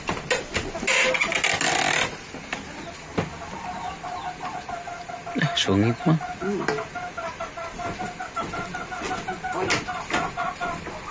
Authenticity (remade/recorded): recorded